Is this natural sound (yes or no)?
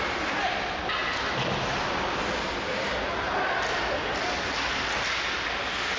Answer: yes